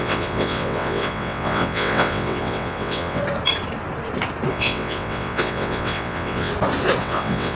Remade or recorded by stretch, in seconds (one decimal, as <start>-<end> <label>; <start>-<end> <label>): 0.0-3.2 remade; 3.2-4.5 recorded; 4.5-6.5 remade; 6.5-7.0 recorded; 7.0-7.5 remade